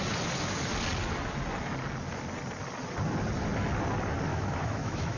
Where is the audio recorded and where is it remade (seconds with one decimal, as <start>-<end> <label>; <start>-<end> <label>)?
0.0-4.3 recorded; 4.3-5.2 remade